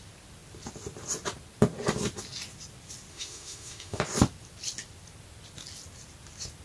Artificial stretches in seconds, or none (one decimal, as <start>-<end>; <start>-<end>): 3.1-4.0

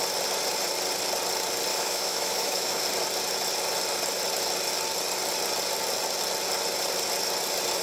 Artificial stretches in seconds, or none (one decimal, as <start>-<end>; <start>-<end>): 1.7-2.8

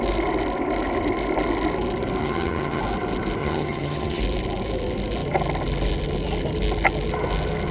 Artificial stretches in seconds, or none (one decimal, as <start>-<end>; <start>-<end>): 2.2-2.8; 3.4-4.2